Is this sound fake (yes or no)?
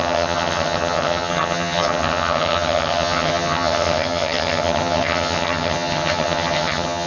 yes